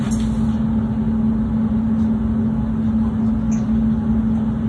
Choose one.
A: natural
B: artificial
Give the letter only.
A